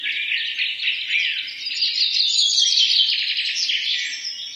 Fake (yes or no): no